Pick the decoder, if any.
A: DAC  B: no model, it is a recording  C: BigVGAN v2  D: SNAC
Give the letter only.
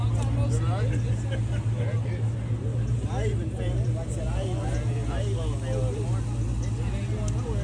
B